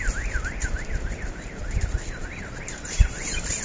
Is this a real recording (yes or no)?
yes